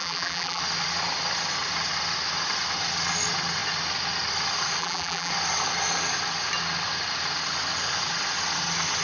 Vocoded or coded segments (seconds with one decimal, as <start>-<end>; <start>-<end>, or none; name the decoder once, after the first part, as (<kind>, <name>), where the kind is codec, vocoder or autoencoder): 0.0-0.6 (vocoder, BigVGAN v2); 4.8-5.3

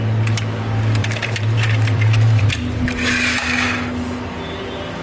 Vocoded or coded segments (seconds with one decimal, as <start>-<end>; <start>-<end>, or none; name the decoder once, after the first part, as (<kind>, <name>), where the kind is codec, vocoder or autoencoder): 1.0-2.5 (vocoder, BigVGAN v2)